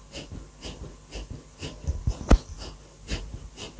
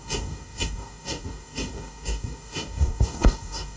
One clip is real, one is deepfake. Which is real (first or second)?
first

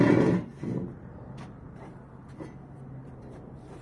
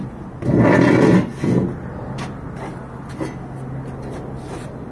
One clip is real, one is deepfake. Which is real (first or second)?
second